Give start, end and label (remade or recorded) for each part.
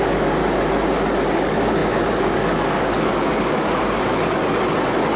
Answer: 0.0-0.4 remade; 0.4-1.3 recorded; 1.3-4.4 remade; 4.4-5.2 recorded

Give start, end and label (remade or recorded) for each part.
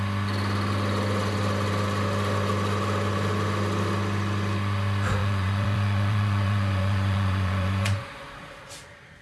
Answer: 0.0-5.2 recorded; 5.2-8.3 remade; 8.3-9.2 recorded